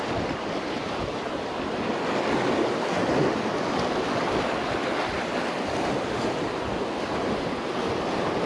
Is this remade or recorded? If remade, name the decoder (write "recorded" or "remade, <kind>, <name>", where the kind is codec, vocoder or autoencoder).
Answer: recorded